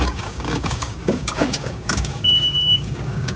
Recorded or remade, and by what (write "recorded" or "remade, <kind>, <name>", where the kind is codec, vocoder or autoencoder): remade, codec, DAC